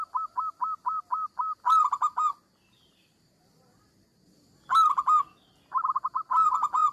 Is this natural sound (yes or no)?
yes